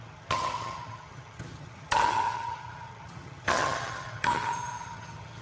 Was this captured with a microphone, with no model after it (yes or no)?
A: no